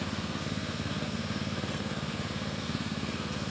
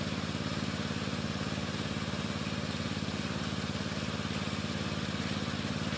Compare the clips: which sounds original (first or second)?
second